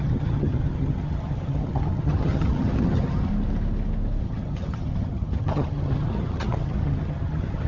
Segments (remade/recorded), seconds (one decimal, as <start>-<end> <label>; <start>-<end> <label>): 0.0-3.3 remade; 3.3-4.2 recorded; 4.2-7.7 remade